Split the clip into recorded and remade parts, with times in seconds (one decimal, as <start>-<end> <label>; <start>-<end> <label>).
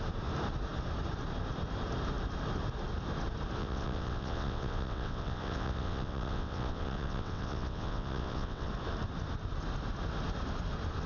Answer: 0.0-3.6 recorded; 3.6-8.7 remade; 8.7-11.1 recorded